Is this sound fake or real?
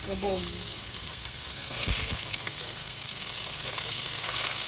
fake